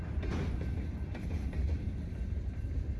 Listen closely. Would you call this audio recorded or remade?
recorded